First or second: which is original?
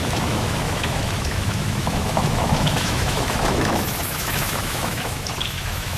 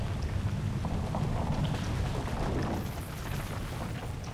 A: second